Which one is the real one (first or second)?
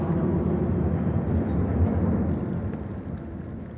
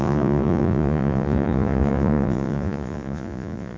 first